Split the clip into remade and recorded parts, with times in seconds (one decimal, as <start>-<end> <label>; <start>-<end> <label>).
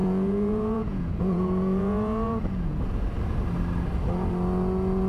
0.0-2.8 remade; 2.8-5.1 recorded